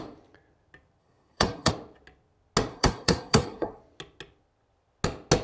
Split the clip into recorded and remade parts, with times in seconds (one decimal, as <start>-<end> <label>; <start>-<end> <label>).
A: 0.0-1.0 recorded; 1.0-1.7 remade; 1.7-2.7 recorded; 2.7-3.8 remade; 3.8-5.4 recorded